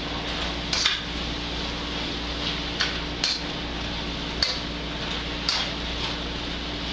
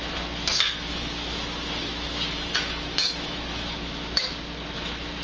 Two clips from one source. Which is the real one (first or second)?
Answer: first